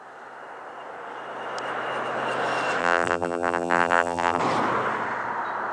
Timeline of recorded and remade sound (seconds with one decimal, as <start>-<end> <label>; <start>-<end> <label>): 0.0-2.8 recorded; 2.8-4.4 remade; 4.4-5.7 recorded